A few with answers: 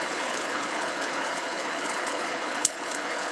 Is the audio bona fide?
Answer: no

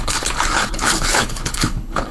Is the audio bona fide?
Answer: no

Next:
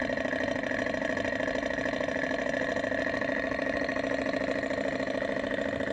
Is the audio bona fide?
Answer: yes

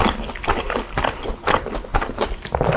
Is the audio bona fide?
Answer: yes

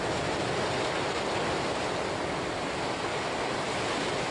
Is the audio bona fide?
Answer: yes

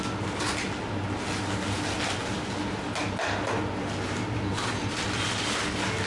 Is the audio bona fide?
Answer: yes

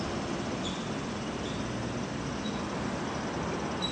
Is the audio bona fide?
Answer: yes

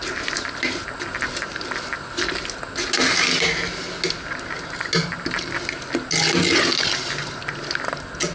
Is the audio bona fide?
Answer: yes